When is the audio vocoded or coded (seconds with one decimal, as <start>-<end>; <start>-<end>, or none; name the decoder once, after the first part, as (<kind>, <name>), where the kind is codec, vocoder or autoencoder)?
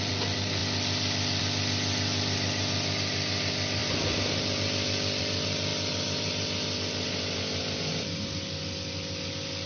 none